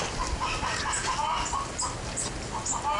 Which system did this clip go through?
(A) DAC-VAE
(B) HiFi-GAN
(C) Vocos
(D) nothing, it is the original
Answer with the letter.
D